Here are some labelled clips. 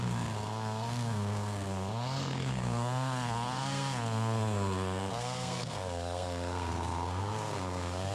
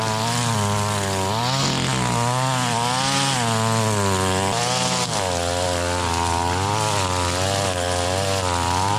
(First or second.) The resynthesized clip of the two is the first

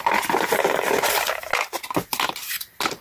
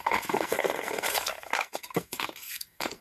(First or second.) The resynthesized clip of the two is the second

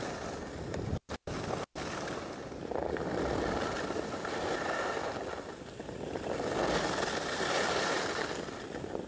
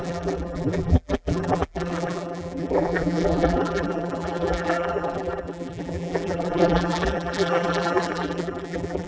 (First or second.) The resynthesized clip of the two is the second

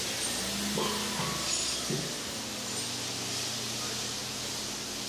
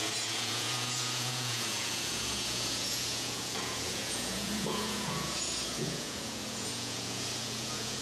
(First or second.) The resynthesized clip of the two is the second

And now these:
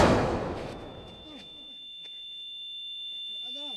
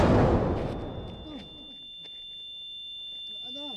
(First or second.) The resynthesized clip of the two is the first